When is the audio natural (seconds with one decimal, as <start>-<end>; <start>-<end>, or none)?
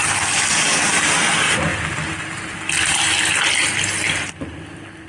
0.0-5.1